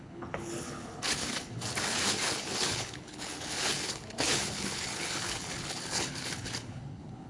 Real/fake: fake